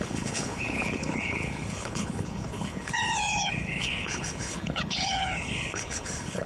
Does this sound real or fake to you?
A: fake